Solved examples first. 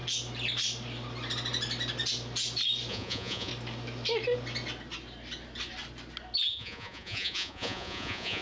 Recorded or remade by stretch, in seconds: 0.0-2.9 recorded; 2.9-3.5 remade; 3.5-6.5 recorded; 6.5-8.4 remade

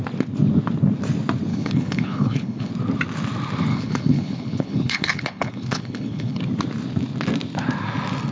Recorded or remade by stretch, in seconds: 0.0-1.5 recorded; 1.5-2.7 remade; 2.7-3.7 recorded; 3.7-6.4 remade; 6.4-8.3 recorded

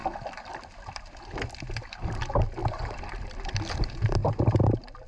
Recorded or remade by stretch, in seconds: 0.0-5.1 recorded

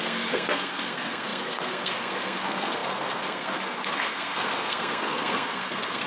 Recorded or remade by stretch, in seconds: 0.0-6.1 remade